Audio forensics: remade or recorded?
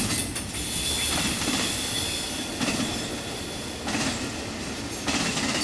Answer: recorded